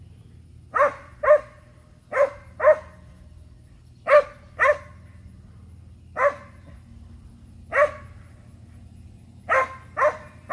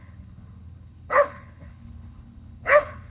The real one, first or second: first